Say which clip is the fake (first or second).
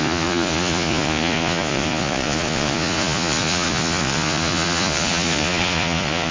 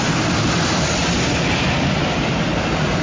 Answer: first